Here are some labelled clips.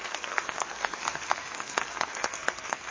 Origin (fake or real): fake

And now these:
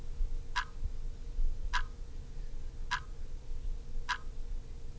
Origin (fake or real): real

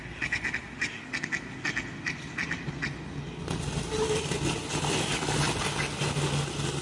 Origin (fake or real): real